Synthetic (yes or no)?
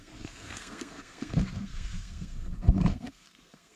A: yes